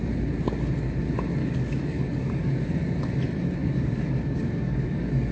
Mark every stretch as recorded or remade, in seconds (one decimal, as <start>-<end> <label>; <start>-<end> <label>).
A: 0.0-1.4 recorded; 1.4-3.0 remade; 3.0-3.6 recorded; 3.6-5.3 remade